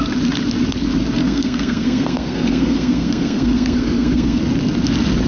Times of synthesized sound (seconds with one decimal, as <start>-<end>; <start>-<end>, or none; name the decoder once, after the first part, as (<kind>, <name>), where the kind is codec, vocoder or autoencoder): 1.2-4.4 (codec, SNAC)